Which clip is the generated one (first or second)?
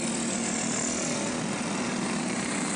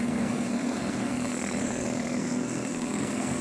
second